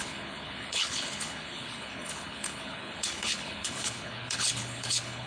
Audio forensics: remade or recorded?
remade